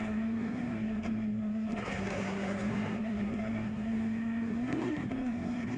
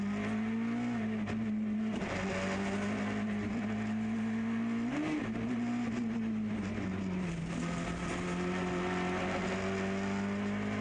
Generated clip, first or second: first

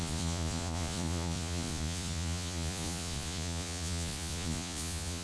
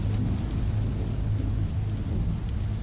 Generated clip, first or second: first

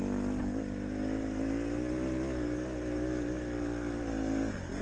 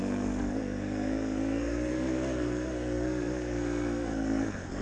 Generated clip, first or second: second